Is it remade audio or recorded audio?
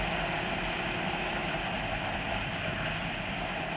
recorded